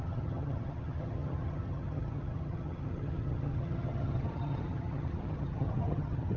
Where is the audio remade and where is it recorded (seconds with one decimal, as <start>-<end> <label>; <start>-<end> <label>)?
0.0-6.4 remade